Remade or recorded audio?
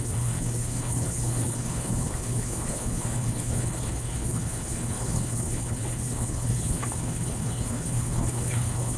remade